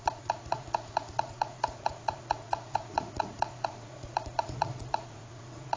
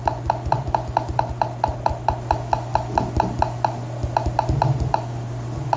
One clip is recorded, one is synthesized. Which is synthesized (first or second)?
first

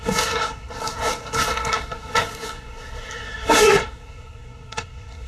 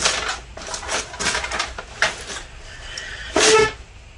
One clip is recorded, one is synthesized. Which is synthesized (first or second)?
first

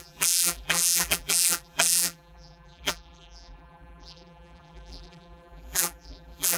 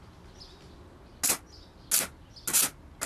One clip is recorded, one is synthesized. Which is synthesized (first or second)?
first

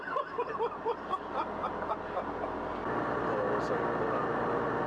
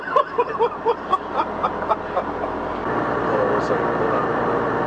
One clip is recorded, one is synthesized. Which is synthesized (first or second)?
second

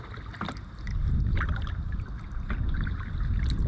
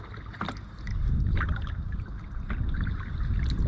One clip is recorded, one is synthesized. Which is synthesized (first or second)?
first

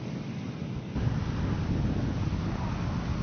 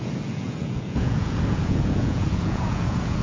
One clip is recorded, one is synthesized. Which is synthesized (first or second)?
second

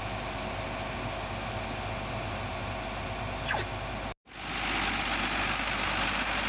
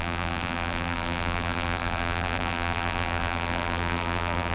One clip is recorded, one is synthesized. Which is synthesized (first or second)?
second